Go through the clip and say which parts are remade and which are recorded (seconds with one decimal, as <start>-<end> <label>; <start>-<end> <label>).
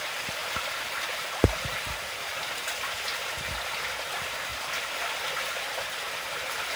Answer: 0.0-0.4 recorded; 0.4-2.5 remade; 2.5-6.8 recorded